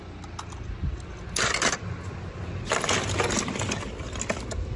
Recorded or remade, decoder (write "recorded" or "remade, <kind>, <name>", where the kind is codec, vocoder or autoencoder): recorded